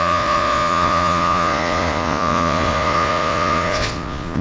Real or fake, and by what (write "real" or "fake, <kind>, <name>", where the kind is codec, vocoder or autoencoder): fake, vocoder, Vocos